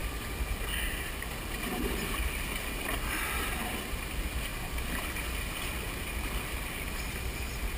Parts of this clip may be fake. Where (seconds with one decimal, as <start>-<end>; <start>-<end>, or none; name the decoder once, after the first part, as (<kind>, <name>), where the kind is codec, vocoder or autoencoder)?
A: none